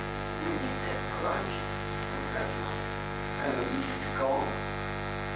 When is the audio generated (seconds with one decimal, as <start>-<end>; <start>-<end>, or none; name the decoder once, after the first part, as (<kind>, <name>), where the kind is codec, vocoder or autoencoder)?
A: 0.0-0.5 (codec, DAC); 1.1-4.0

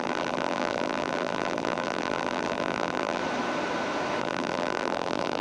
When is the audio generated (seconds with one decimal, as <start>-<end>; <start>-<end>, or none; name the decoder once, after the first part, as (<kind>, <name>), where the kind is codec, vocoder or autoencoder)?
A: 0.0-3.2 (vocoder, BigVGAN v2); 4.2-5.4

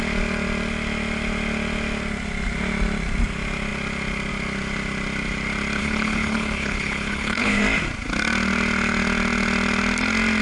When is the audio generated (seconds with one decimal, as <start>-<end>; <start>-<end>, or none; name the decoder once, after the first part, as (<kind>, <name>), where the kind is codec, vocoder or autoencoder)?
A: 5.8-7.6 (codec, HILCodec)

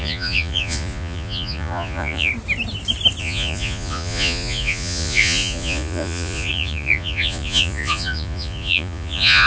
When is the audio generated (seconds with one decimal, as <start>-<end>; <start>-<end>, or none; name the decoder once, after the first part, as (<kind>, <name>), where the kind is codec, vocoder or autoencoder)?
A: 0.0-2.3 (vocoder, Vocos); 3.2-9.5